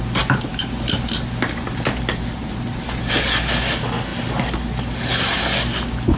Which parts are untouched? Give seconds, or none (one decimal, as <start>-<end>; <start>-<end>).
0.0-6.2